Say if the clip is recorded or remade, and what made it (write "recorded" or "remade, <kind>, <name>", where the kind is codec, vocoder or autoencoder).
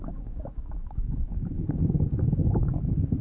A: remade, codec, DAC